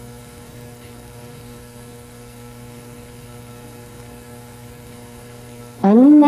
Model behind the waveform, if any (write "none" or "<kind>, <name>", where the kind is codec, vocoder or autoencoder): codec, SNAC